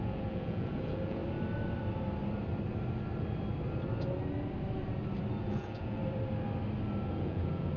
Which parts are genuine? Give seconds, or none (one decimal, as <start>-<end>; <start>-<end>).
1.2-5.4; 6.0-7.1